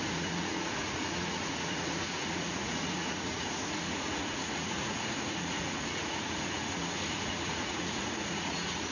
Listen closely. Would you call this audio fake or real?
fake